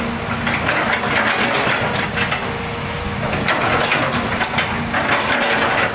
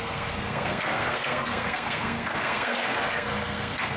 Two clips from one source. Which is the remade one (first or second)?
second